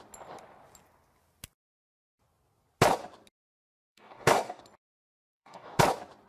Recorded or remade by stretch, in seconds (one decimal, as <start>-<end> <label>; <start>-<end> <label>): 0.0-3.9 recorded; 3.9-4.6 remade; 4.6-5.0 recorded; 5.0-5.8 remade; 5.8-6.3 recorded